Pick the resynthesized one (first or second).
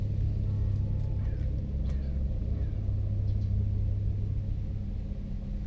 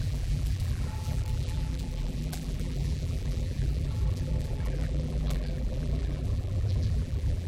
second